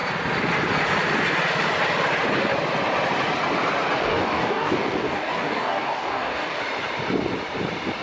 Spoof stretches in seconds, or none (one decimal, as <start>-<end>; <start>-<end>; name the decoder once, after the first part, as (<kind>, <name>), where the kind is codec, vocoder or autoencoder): 4.0-6.6 (codec, DAC)